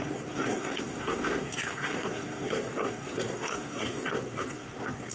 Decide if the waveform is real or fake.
fake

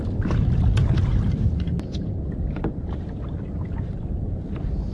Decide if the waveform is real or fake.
real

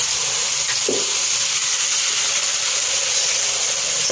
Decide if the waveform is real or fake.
real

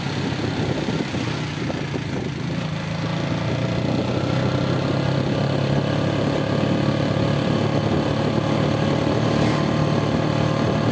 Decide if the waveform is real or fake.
real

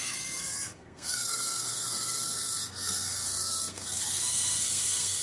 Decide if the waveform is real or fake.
fake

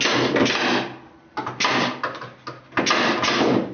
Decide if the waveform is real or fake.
real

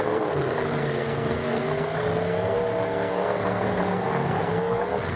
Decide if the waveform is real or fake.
fake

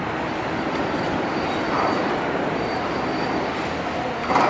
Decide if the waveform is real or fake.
real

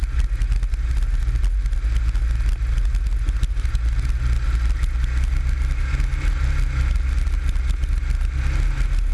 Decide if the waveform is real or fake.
real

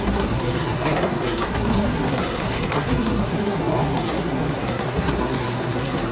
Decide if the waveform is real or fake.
fake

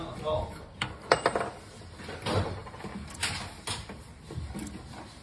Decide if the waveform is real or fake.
real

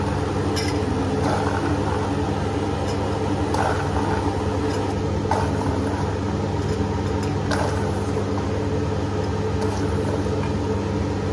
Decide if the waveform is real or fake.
real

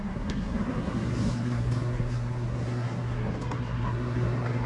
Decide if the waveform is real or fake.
fake